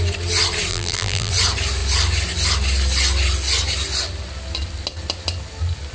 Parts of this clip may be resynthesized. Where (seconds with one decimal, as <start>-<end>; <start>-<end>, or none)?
0.7-1.3